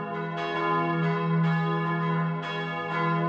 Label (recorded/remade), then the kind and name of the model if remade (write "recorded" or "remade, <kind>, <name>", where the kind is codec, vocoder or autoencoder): recorded